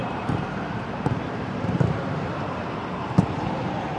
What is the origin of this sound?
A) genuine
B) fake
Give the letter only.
B